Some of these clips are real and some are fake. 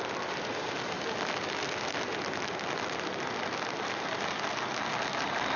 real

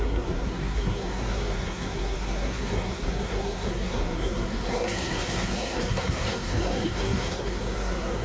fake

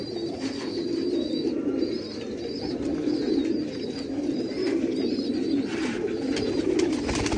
real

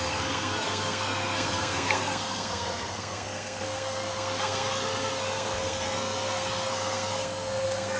fake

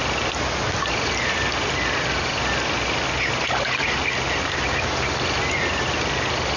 real